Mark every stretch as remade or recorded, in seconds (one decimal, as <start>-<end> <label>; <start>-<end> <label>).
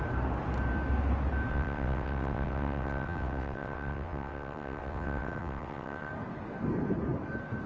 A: 0.0-1.5 recorded; 1.5-6.1 remade; 6.1-7.7 recorded